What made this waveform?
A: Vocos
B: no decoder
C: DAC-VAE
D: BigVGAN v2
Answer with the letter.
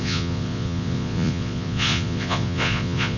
A